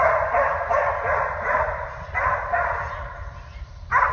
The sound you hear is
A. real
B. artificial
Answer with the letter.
B